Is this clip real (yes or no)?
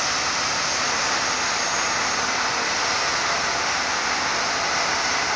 yes